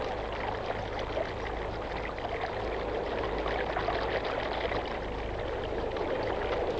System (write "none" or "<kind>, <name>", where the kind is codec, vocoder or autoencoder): none